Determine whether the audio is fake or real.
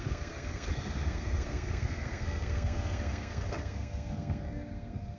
fake